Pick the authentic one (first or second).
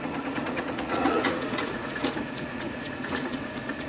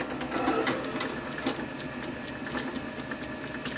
second